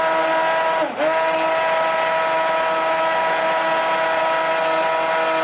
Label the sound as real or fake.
real